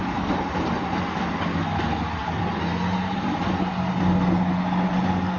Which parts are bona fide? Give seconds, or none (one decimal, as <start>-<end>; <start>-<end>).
0.0-5.4